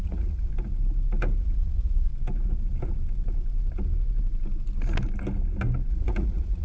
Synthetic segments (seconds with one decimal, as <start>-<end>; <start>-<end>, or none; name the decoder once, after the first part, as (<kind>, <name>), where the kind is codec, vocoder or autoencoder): 0.0-0.5 (vocoder, Vocos); 1.4-2.1; 5.9-6.6